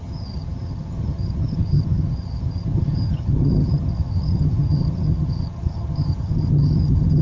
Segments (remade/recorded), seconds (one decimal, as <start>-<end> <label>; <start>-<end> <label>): 0.0-7.2 remade